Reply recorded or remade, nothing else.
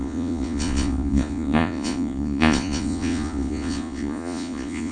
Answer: remade